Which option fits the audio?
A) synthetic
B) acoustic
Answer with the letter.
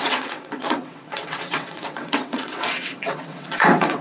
A